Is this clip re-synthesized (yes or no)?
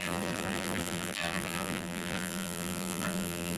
yes